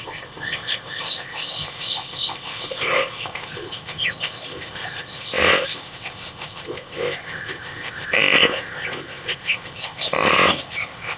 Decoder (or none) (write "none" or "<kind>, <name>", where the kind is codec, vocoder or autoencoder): codec, ZipCodec